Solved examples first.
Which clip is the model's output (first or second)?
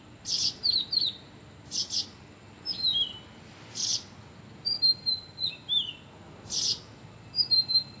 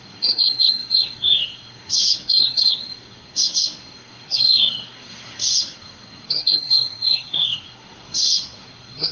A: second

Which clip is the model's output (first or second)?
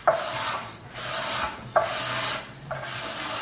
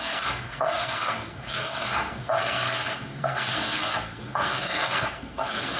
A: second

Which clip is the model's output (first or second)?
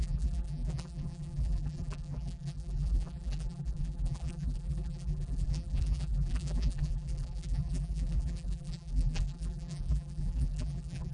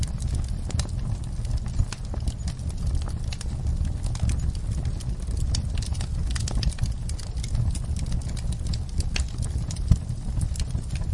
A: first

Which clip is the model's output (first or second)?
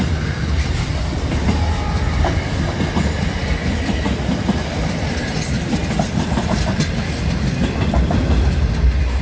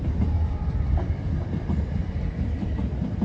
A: second